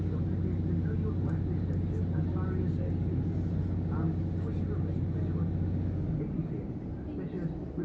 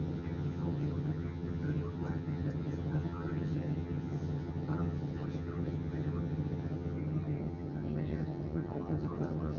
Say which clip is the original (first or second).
first